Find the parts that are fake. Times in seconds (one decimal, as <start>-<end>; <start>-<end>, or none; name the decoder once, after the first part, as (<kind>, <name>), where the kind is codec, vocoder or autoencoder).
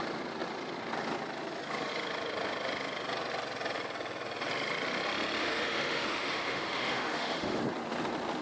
5.4-7.6 (autoencoder, DAC-VAE)